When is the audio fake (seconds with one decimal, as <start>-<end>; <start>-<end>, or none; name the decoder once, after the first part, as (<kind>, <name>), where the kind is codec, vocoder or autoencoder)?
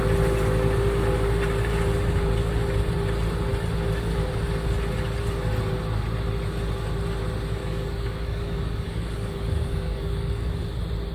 7.6-10.6 (codec, DAC)